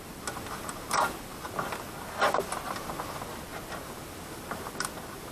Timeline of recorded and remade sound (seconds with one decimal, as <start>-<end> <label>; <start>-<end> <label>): 0.0-5.3 recorded